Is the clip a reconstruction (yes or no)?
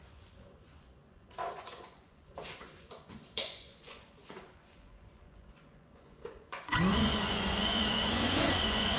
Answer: yes